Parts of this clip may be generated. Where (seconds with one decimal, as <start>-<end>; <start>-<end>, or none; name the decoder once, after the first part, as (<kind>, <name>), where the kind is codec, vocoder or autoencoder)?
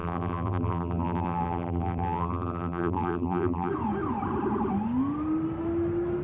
0.0-3.7 (vocoder, BigVGAN v2)